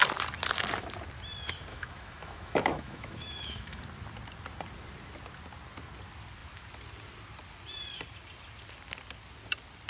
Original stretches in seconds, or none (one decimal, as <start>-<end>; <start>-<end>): 0.0-1.7; 3.8-9.9